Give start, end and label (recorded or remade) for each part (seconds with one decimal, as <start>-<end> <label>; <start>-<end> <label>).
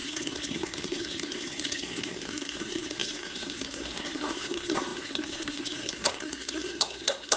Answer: 0.0-7.4 remade